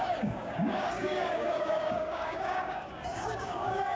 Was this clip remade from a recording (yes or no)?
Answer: yes